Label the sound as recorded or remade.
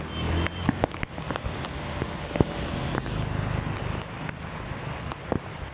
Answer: recorded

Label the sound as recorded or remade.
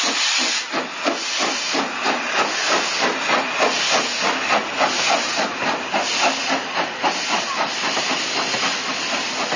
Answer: recorded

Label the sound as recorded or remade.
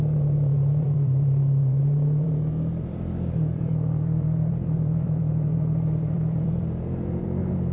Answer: remade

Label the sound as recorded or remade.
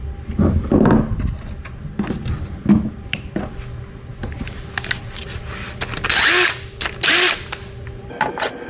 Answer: recorded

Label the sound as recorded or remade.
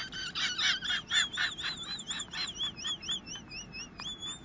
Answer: recorded